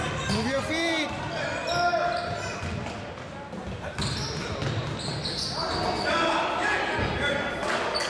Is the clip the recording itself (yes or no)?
yes